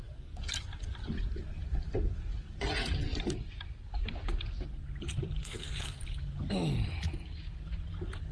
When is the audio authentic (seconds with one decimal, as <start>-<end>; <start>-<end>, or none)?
0.0-5.4; 6.0-8.3